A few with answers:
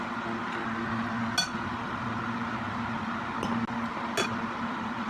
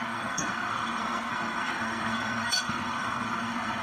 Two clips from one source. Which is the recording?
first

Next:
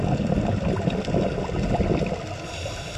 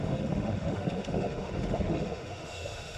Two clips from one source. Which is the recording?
first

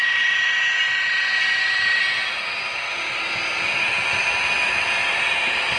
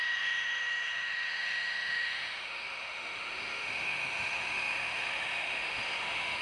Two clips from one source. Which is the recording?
first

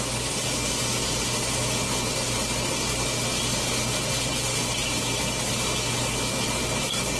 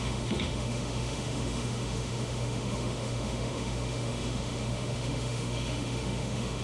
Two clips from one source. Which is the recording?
first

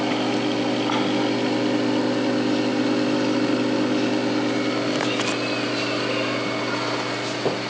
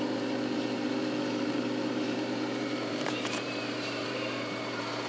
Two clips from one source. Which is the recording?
first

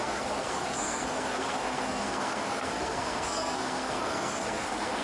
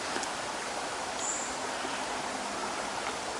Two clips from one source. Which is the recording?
second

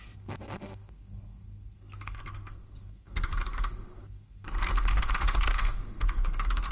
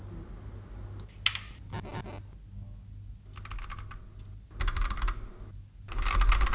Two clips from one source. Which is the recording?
second